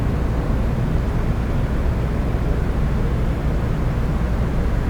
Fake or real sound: real